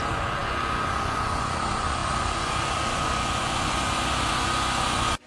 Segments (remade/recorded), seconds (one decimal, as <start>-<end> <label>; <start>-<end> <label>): 0.0-5.3 remade